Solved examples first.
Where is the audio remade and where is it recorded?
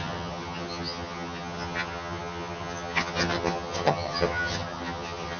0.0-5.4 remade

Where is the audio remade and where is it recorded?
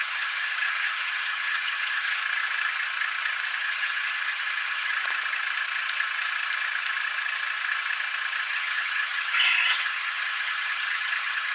0.0-2.2 remade; 2.2-3.6 recorded; 3.6-4.9 remade; 4.9-8.5 recorded; 8.5-11.5 remade